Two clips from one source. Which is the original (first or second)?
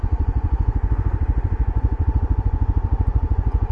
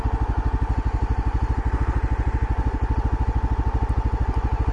second